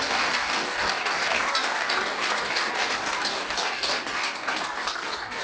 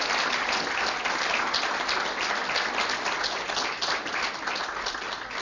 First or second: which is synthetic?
first